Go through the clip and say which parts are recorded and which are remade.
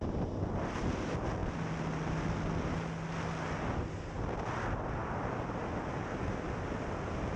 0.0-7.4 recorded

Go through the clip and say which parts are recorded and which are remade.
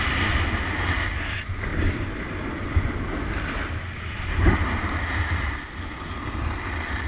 0.0-7.1 recorded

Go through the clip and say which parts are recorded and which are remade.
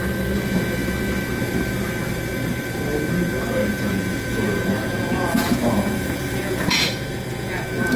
0.0-3.6 recorded; 3.6-8.0 remade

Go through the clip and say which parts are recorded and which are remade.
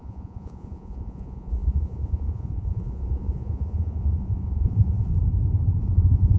0.0-5.1 remade; 5.1-5.8 recorded; 5.8-6.4 remade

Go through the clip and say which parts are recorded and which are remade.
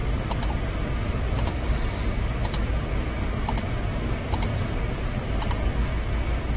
0.0-1.8 recorded; 1.8-2.9 remade; 2.9-4.5 recorded; 4.5-5.5 remade; 5.5-6.6 recorded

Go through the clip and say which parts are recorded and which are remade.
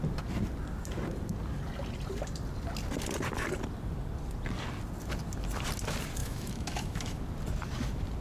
0.0-6.2 recorded; 6.2-7.2 remade; 7.2-8.2 recorded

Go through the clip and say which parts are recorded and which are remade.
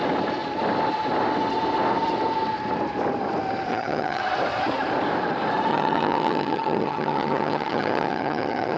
0.0-3.7 recorded; 3.7-4.2 remade; 4.2-5.7 recorded; 5.7-8.8 remade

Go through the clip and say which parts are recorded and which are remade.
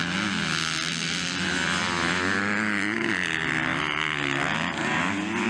0.0-5.5 recorded